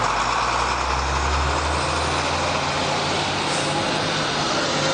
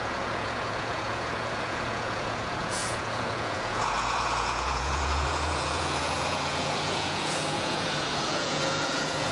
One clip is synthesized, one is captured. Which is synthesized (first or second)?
second